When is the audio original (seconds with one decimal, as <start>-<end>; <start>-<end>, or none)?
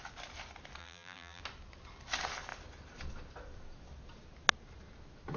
0.0-0.8; 1.4-5.4